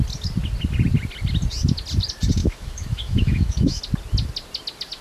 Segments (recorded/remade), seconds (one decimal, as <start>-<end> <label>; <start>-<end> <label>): 0.0-2.4 recorded; 2.4-3.8 remade; 3.8-5.0 recorded